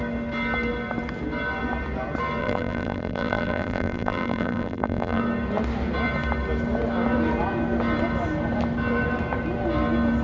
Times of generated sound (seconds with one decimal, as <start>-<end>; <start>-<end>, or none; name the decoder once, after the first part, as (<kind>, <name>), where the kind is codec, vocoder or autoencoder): 2.4-5.2 (vocoder, BigVGAN v2)